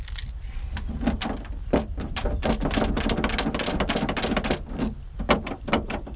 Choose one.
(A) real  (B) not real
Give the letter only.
A